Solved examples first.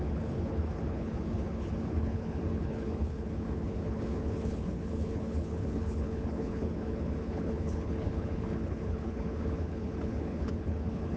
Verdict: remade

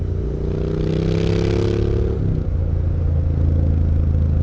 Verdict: recorded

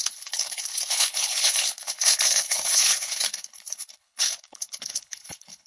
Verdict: remade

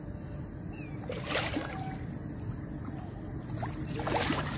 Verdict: recorded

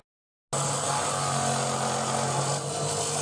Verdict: recorded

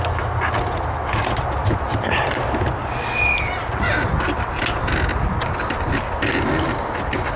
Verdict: recorded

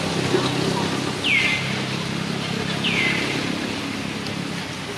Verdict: recorded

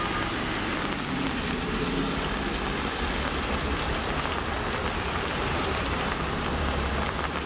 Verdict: recorded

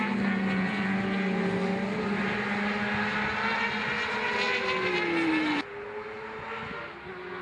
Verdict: recorded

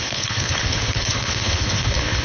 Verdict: remade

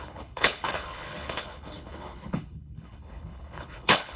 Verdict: remade